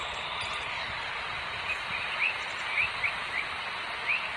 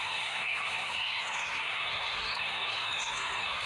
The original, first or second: first